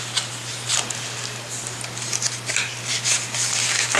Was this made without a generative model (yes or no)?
yes